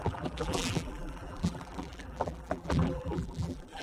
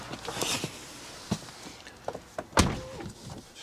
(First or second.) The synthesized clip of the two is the first